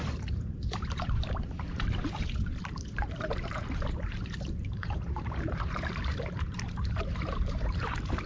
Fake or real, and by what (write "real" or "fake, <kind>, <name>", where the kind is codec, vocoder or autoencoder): fake, vocoder, BigVGAN v2